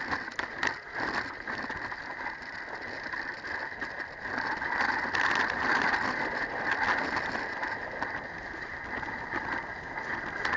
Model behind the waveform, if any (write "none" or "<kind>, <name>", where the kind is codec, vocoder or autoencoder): none